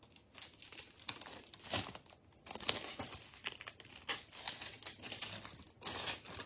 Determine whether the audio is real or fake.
real